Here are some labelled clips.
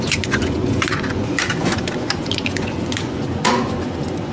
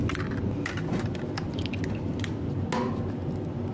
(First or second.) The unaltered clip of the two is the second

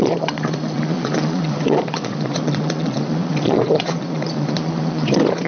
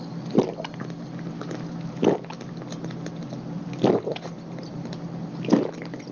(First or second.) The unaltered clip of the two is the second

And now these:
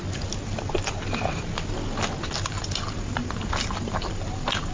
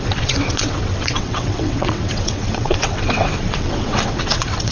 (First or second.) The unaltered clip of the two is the first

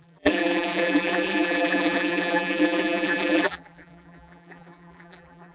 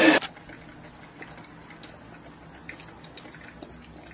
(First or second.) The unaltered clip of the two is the second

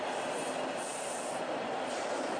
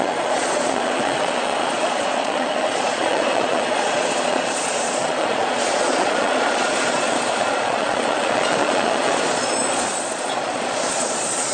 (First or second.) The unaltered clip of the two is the first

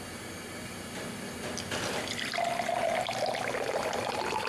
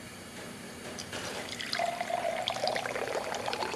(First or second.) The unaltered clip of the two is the first